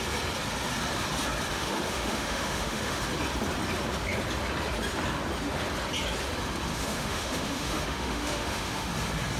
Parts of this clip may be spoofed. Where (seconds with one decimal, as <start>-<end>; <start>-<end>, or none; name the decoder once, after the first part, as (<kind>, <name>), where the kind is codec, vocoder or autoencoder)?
1.5-3.0 (autoencoder, DAC-VAE); 6.7-8.9